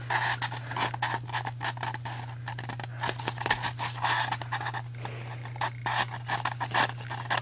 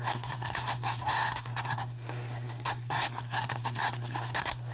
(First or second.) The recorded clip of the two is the first